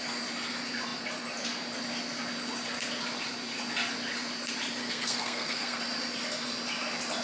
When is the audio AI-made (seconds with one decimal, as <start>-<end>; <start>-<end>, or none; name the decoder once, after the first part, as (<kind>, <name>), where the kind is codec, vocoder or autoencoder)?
4.8-5.8 (codec, SNAC)